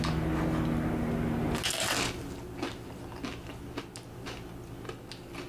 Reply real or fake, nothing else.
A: real